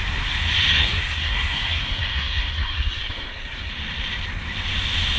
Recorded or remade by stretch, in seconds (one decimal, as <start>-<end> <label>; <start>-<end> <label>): 0.0-0.7 recorded; 0.7-3.7 remade; 3.7-5.2 recorded